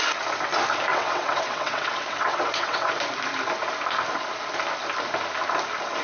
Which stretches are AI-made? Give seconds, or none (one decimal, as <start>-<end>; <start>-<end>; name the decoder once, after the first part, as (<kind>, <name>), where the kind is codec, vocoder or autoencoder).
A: 0.9-2.9 (vocoder, WaveNeXt)